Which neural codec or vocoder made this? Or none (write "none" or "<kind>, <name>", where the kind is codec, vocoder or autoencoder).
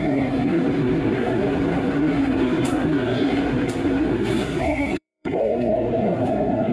codec, SNAC